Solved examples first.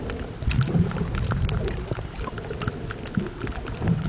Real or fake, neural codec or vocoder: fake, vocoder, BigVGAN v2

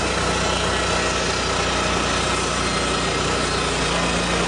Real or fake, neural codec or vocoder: real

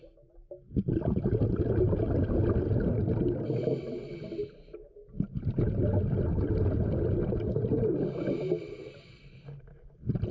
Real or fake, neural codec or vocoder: real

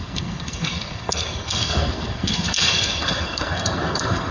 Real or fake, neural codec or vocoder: fake, codec, SNAC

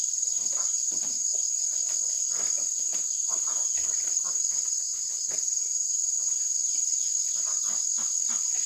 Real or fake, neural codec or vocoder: real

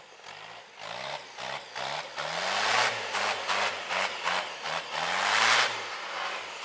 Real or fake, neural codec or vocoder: real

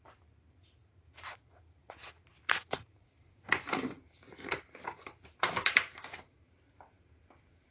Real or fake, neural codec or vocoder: fake, vocoder, BigVGAN v2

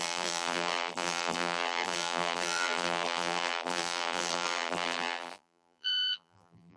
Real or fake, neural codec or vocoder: fake, vocoder, BigVGAN v2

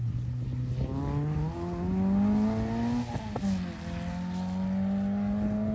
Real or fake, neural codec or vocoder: real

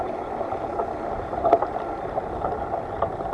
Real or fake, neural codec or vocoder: real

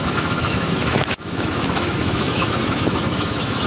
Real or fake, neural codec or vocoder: fake, autoencoder, DAC-VAE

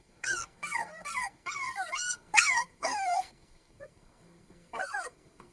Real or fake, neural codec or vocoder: fake, codec, SNAC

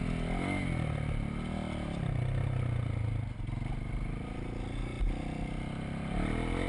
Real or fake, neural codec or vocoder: real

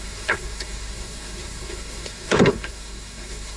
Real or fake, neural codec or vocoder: fake, codec, SNAC